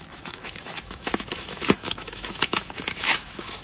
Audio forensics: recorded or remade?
remade